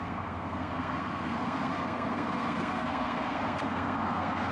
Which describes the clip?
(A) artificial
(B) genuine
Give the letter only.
A